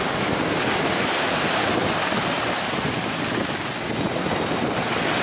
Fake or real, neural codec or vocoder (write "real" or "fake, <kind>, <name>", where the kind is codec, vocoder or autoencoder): real